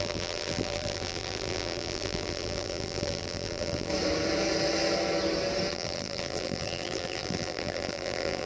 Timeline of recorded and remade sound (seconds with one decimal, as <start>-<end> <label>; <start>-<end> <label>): 0.0-3.9 remade; 3.9-5.7 recorded; 5.7-8.5 remade